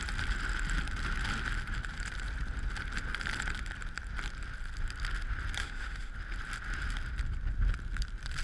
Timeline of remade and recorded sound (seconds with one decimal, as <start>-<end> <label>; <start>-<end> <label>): 0.0-5.6 recorded; 5.6-6.1 remade; 6.1-8.4 recorded